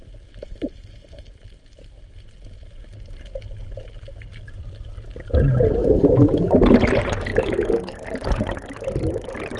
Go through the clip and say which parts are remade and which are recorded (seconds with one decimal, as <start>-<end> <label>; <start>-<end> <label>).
0.0-5.8 recorded; 5.8-6.5 remade; 6.5-7.3 recorded; 7.3-7.9 remade; 7.9-9.6 recorded